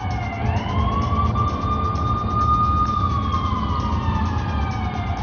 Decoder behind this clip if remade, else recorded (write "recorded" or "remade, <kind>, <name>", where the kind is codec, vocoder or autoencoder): recorded